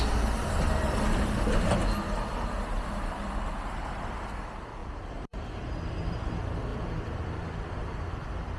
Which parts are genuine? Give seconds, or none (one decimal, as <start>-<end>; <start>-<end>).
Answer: 0.0-4.8; 5.6-6.7; 7.6-8.6